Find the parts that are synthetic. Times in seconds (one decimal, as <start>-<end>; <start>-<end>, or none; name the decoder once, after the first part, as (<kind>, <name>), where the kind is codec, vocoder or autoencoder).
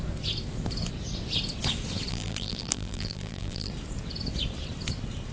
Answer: 2.1-3.7 (vocoder, BigVGAN v2)